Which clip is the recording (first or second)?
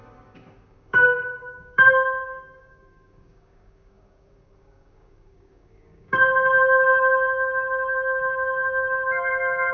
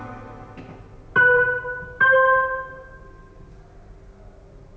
second